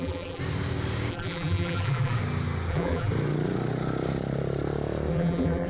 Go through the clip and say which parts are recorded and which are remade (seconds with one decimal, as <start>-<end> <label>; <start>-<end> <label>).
0.0-0.4 remade; 0.4-1.1 recorded; 1.1-2.2 remade; 2.2-2.7 recorded; 2.7-3.1 remade; 3.1-5.1 recorded; 5.1-5.7 remade